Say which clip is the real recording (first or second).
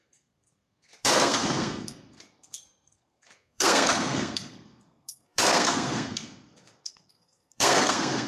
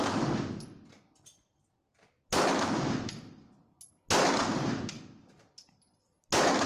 second